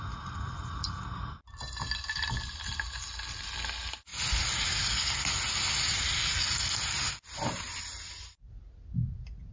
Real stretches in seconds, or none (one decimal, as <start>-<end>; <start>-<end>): 0.0-9.5